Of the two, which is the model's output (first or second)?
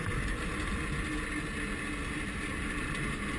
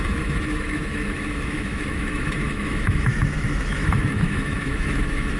second